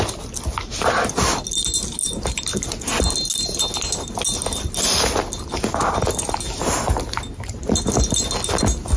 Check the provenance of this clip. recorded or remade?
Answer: recorded